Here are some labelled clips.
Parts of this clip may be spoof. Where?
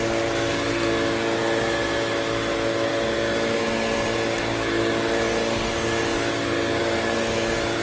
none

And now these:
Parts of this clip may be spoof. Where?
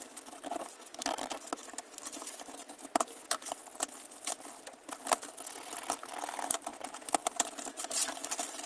none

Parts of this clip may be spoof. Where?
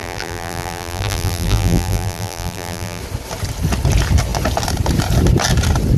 0.0-3.0 (vocoder, BigVGAN v2)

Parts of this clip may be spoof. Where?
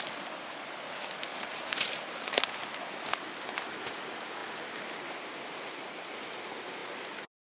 1.3-2.4 (vocoder, BigVGAN v2); 6.8-7.5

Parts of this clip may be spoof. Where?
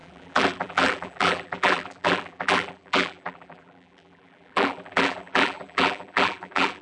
0.0-6.8 (vocoder, BigVGAN v2)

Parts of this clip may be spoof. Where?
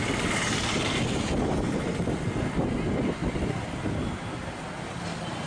3.2-4.1 (vocoder, BigVGAN v2)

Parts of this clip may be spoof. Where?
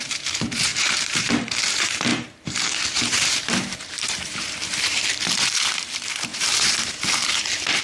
0.0-7.8 (vocoder, BigVGAN v2)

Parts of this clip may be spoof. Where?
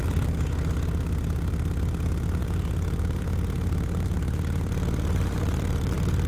2.4-6.3 (vocoder, BigVGAN v2)